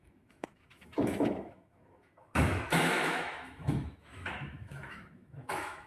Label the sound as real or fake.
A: fake